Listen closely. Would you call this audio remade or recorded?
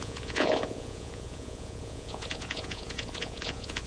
remade